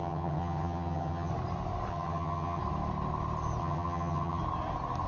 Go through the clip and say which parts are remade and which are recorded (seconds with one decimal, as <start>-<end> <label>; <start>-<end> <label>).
0.0-1.3 remade; 1.3-1.9 recorded; 1.9-2.6 remade; 2.6-3.6 recorded; 3.6-4.4 remade; 4.4-5.1 recorded